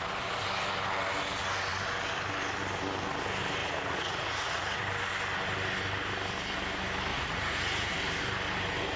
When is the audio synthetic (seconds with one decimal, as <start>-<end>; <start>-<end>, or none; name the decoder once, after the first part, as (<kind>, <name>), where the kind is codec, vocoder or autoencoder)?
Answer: 3.6-4.8 (vocoder, Vocos); 7.1-7.9